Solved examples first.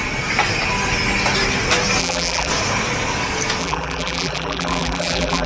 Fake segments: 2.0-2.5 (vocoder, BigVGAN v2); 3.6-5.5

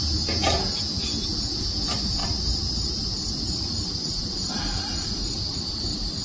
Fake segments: 2.2-5.6 (vocoder, BigVGAN v2)

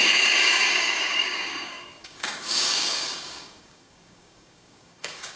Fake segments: 0.0-5.4 (codec, DAC)

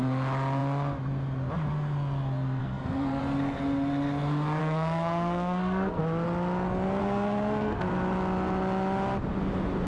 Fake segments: 2.6-3.2 (codec, SNAC); 4.6-6.0; 7.0-7.9